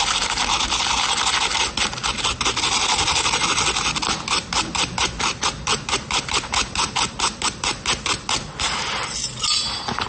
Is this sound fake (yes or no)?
no